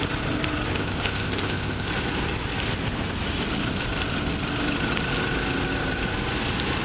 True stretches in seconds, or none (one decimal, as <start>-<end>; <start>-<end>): 0.0-0.7; 1.9-6.8